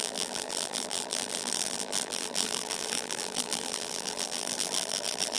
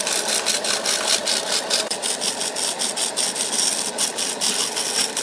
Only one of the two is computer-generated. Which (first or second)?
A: first